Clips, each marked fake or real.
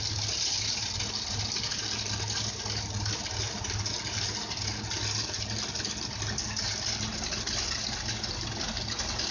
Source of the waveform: real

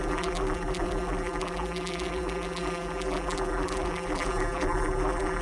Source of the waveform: fake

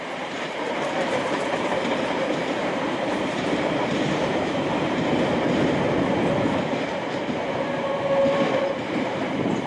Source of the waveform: fake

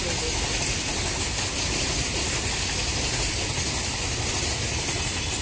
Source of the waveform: real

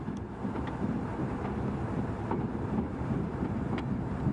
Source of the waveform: fake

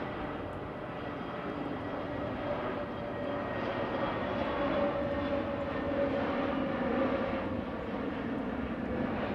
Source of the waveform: real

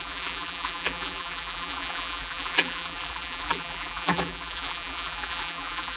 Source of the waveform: fake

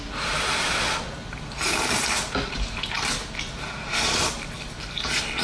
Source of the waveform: real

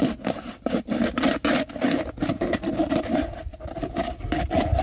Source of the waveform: real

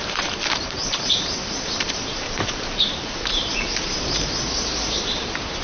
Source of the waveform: fake